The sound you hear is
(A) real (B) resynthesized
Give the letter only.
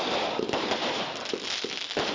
A